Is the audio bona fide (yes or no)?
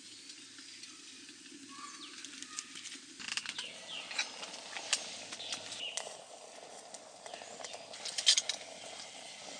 yes